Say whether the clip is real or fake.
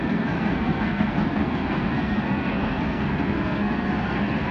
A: fake